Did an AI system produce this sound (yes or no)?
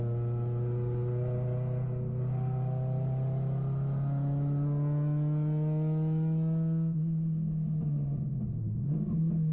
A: no